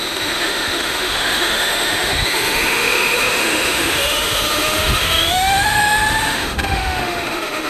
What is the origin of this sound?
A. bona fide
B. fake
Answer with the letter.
B